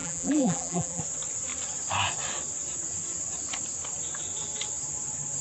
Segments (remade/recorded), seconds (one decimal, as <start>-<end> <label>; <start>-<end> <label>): 0.0-1.0 remade; 1.0-5.4 recorded